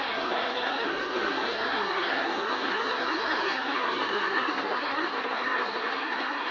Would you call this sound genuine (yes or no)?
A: no